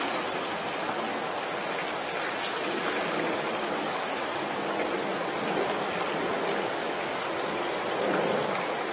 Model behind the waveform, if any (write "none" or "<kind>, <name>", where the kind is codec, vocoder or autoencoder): none